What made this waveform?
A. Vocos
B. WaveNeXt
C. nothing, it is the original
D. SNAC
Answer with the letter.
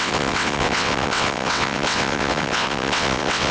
B